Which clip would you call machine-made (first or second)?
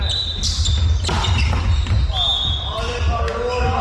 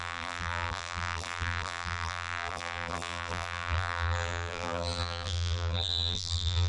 second